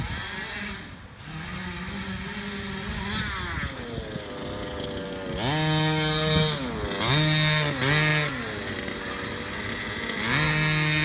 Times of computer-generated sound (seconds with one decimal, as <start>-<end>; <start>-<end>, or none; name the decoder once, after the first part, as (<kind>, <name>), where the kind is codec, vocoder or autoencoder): none